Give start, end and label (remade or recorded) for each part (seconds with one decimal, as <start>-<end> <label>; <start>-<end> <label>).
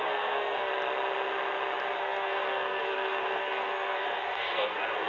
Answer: 0.0-0.7 remade; 0.7-2.0 recorded; 2.0-5.1 remade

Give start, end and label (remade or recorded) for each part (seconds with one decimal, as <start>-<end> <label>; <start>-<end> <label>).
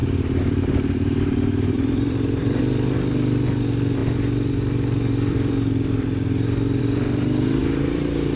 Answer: 0.0-2.6 remade; 2.6-4.0 recorded; 4.0-6.8 remade; 6.8-7.6 recorded; 7.6-8.4 remade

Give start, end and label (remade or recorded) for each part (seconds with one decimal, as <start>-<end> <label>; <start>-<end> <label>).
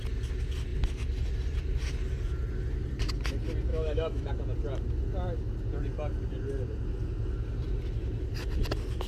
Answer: 0.0-3.7 recorded; 3.7-4.3 remade; 4.3-9.1 recorded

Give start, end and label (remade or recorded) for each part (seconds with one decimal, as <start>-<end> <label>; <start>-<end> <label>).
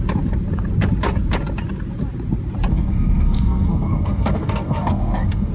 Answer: 0.0-2.7 recorded; 2.7-5.5 remade